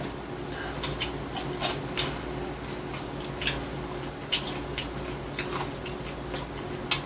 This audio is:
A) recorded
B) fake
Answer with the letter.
A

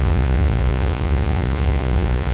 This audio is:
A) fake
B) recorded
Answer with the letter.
A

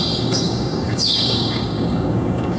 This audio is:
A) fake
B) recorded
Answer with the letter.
A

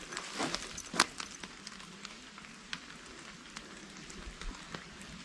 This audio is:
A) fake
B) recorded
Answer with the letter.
B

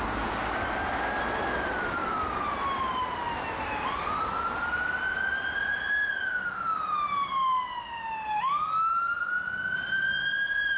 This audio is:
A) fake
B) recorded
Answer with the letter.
B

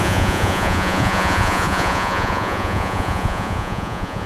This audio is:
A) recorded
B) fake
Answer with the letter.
B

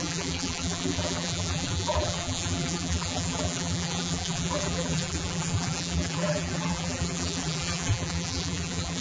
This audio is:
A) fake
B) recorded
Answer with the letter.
A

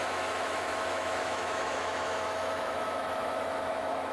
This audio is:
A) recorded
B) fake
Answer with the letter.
B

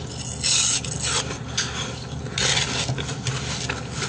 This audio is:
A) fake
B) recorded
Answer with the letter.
B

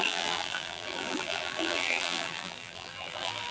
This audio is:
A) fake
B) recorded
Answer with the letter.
A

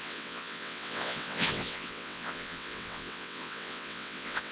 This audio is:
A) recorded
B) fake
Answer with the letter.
B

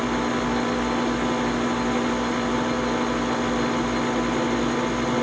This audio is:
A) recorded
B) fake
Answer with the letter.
A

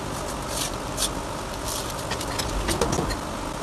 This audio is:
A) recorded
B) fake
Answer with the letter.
A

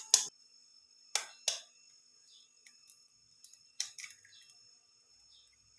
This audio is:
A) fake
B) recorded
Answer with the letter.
B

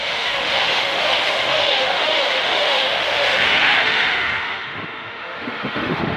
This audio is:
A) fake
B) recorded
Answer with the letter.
A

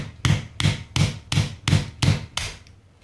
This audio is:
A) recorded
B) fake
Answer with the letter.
A